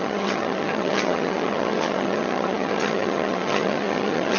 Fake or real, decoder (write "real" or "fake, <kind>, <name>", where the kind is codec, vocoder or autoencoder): fake, vocoder, HiFi-GAN